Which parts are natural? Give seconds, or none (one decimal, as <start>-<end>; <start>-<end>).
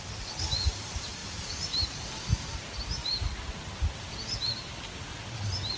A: 0.0-5.8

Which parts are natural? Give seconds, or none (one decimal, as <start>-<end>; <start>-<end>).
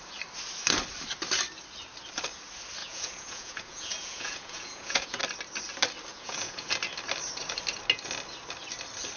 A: 0.0-2.8; 5.2-6.1; 6.7-9.2